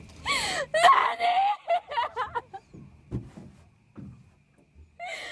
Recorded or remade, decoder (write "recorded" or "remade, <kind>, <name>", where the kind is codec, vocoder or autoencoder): recorded